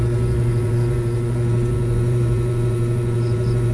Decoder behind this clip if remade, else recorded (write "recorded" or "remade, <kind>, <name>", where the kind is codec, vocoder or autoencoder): remade, vocoder, Vocos